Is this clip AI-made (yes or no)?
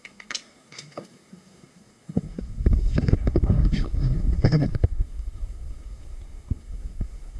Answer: yes